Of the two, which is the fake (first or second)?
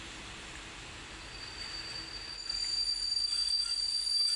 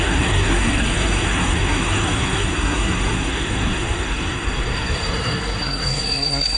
second